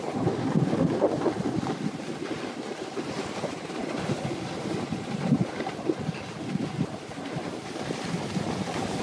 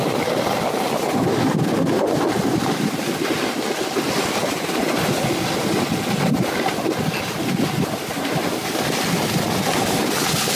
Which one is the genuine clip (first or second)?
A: second